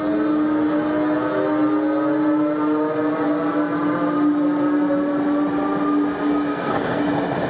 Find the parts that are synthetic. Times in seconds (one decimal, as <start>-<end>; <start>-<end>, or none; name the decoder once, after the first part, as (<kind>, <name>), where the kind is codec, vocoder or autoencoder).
6.5-7.0 (codec, SNAC)